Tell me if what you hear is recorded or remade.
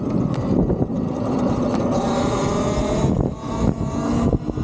recorded